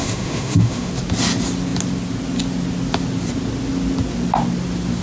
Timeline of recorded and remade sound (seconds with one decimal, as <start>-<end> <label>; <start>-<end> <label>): 0.0-0.9 remade; 0.9-5.0 recorded